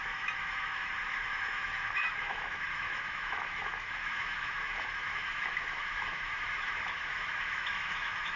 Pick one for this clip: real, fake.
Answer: fake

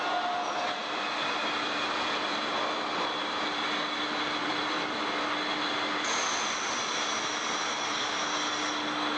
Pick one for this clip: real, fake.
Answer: real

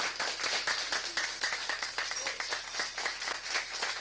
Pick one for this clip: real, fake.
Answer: real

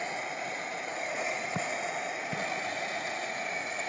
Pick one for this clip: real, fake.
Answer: fake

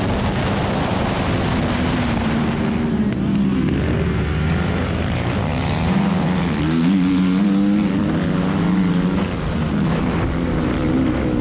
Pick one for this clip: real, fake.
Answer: real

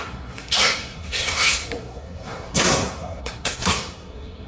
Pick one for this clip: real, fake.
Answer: fake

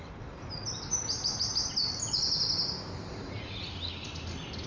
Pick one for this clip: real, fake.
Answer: real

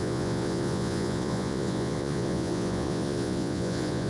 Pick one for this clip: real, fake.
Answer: fake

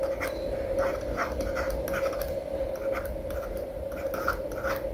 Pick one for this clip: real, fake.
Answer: real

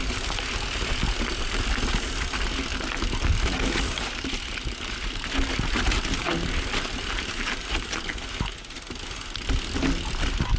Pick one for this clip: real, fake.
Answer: real